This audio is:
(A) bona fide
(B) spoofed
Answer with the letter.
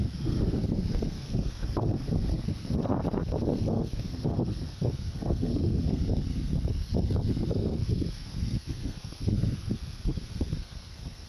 B